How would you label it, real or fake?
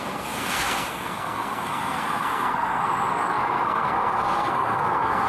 fake